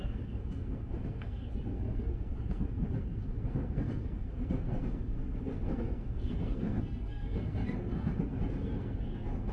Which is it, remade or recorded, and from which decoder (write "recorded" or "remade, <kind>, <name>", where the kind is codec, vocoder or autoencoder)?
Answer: remade, codec, SNAC